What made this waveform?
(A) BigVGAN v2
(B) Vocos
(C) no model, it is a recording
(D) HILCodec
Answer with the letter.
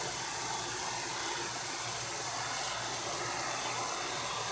C